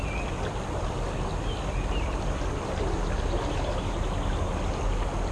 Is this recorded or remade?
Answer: recorded